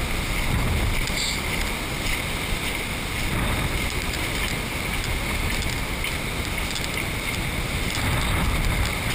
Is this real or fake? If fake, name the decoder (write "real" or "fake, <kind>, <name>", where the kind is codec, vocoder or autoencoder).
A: real